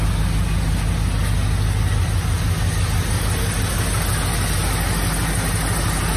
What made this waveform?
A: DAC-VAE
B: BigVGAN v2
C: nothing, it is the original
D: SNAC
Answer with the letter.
C